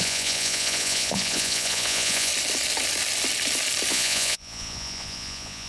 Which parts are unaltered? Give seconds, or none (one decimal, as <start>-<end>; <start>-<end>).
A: 2.3-3.9